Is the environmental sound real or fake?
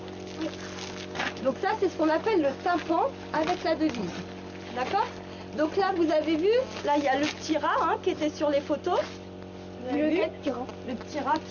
real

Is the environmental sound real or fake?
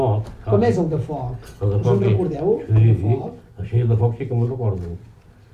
real